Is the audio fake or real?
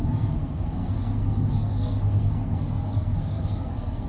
fake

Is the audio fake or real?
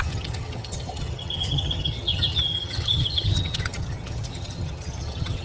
fake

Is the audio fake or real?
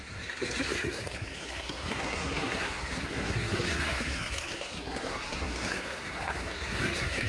fake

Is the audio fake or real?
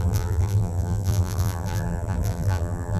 fake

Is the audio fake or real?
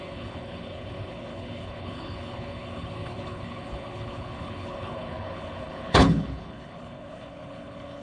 fake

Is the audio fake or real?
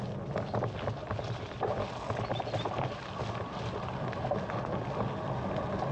real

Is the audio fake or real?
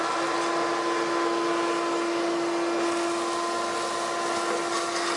real